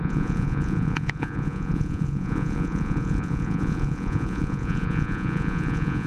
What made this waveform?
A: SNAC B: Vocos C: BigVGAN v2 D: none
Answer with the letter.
B